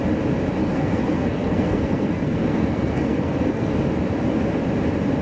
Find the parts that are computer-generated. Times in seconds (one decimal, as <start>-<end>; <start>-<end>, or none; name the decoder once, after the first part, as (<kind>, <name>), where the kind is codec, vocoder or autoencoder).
0.6-3.7 (codec, SNAC)